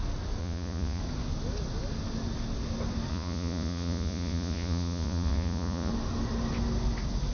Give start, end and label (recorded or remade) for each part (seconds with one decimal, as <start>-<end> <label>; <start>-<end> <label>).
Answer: 0.0-0.4 recorded; 0.4-1.0 remade; 1.0-3.1 recorded; 3.1-5.9 remade; 5.9-7.3 recorded